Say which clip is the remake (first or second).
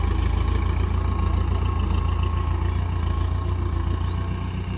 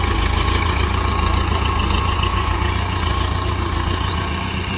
second